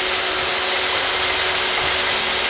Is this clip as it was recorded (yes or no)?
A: yes